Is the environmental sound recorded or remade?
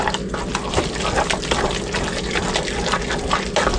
recorded